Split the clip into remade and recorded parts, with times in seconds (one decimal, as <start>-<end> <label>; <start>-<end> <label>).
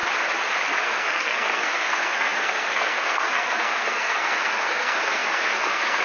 0.0-0.8 recorded; 0.8-6.0 remade